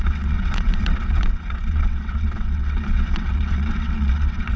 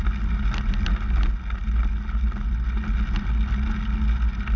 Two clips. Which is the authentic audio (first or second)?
second